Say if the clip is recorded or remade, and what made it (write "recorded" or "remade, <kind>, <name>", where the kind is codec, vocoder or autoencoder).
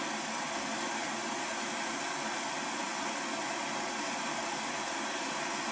recorded